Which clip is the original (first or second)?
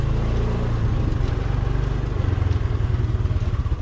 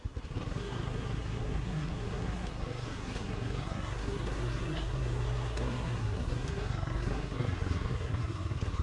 first